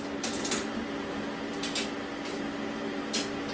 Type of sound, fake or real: real